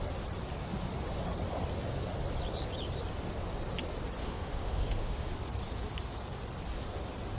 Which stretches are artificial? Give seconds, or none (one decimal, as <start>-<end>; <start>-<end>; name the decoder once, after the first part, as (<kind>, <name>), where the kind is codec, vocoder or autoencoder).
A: 4.2-5.3 (autoencoder, DAC-VAE)